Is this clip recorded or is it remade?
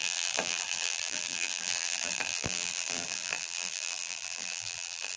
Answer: remade